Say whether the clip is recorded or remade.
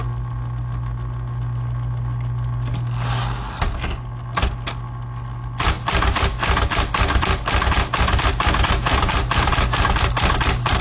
recorded